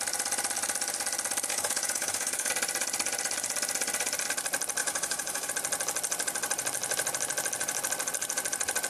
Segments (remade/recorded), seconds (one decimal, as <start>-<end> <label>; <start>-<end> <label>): 0.0-1.5 recorded; 1.5-2.5 remade; 2.5-4.8 recorded; 4.8-5.5 remade; 5.5-8.9 recorded